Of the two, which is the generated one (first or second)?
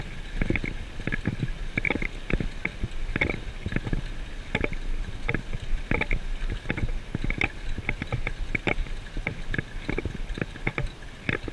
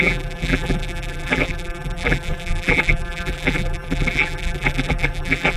second